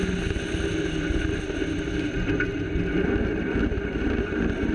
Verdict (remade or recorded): recorded